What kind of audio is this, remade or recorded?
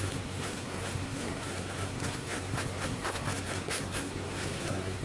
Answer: remade